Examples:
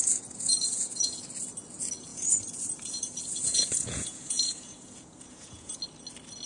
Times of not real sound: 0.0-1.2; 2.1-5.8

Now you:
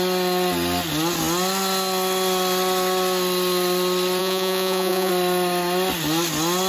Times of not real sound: 4.2-5.1

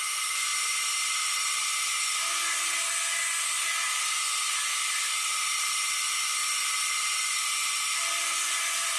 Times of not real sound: 0.0-0.5; 1.2-4.7; 6.0-9.0

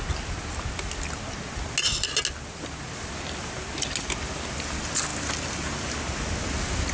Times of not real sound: none

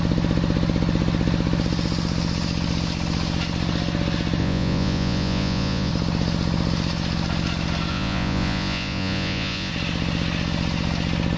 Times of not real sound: 4.4-5.9; 7.9-9.7